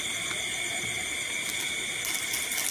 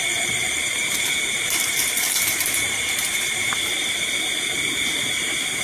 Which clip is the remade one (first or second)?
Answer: second